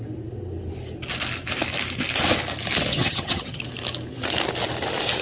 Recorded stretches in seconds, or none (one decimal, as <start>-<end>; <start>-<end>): 0.0-2.9; 3.6-5.2